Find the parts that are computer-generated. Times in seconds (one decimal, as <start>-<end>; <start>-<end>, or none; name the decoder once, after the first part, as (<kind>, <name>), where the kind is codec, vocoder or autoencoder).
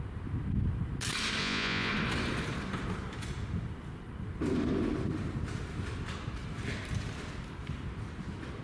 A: 1.4-1.9 (vocoder, Vocos)